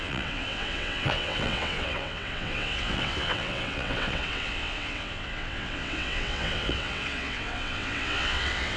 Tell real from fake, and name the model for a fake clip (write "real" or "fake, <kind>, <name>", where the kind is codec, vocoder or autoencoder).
fake, vocoder, WaveNeXt